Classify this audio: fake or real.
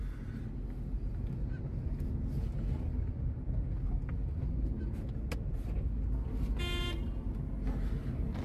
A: real